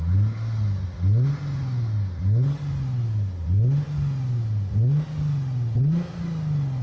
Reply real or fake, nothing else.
real